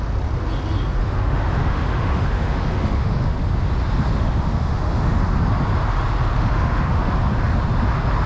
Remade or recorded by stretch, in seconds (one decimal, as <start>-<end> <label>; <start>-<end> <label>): 0.0-1.0 recorded; 1.0-3.4 remade; 3.4-4.2 recorded; 4.2-5.2 remade; 5.2-6.3 recorded; 6.3-7.1 remade; 7.1-8.3 recorded